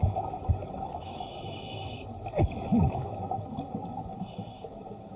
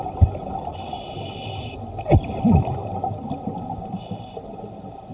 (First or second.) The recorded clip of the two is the second